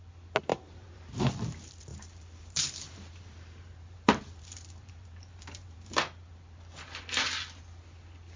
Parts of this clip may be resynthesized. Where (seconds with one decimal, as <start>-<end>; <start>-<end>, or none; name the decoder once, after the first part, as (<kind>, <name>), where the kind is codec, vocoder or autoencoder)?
0.5-1.3 (vocoder, BigVGAN v2); 1.9-6.0